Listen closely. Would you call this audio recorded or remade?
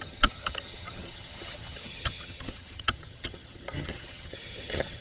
remade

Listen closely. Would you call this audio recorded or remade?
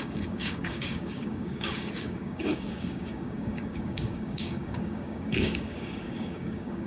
remade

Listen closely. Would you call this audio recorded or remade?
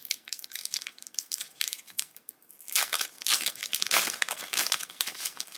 remade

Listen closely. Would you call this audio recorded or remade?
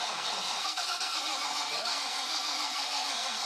remade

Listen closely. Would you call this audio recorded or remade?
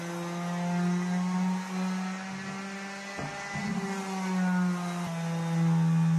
recorded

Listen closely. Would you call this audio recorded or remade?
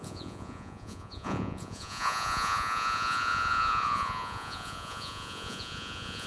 remade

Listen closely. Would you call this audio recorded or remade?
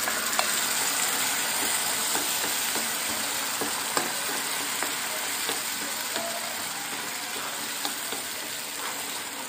recorded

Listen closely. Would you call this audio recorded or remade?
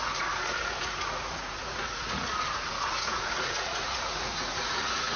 remade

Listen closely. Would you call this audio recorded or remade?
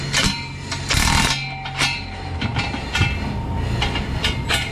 recorded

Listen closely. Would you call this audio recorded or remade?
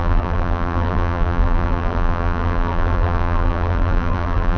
remade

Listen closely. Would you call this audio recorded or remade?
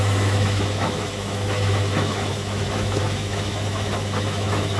remade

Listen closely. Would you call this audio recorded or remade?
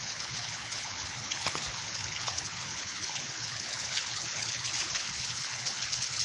remade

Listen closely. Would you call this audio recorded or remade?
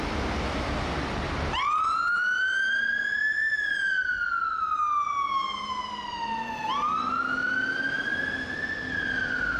recorded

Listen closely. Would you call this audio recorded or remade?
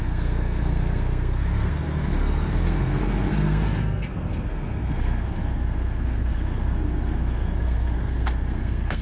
remade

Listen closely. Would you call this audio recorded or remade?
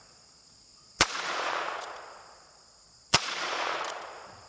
remade